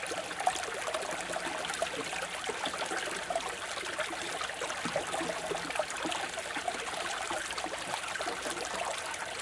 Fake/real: real